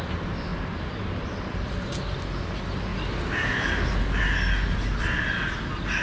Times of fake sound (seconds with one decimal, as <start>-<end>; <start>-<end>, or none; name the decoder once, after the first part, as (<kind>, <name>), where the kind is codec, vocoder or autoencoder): none